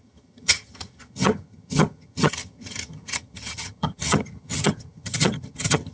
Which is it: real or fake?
fake